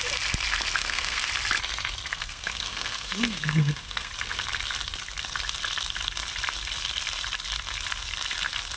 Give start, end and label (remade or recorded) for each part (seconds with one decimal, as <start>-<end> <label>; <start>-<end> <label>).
0.0-0.8 recorded; 0.8-1.3 remade; 1.3-2.1 recorded; 2.1-4.1 remade; 4.1-8.8 recorded